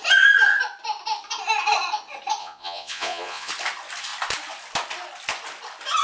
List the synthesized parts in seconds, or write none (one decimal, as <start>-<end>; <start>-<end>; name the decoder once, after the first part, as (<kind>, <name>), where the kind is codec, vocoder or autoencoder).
2.4-3.5 (vocoder, Vocos)